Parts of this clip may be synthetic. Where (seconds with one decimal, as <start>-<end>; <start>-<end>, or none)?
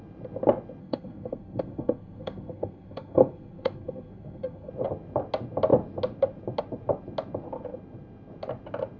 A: 0.8-4.7